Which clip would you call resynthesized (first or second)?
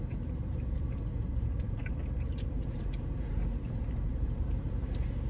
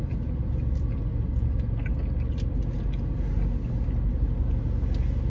first